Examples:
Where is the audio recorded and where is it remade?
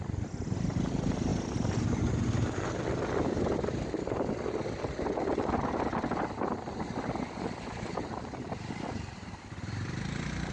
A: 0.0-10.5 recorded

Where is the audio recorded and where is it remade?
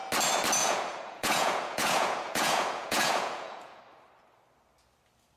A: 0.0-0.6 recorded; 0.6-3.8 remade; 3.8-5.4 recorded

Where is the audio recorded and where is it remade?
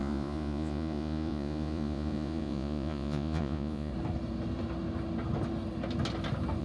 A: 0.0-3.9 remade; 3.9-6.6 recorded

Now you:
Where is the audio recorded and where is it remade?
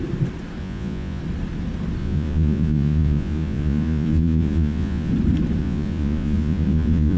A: 0.0-0.6 recorded; 0.6-1.2 remade; 1.2-2.0 recorded; 2.0-5.1 remade; 5.1-5.6 recorded; 5.6-7.2 remade